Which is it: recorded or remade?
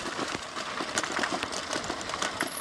recorded